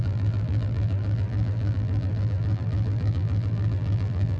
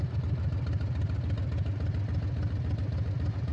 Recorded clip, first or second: second